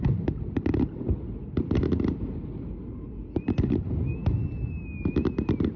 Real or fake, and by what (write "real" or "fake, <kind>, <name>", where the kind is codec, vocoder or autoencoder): real